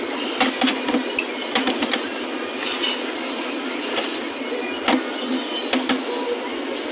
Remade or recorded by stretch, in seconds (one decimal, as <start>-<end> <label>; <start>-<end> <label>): 0.0-6.9 recorded